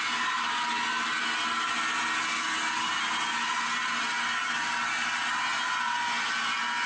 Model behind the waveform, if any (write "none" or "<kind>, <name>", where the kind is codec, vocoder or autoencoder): none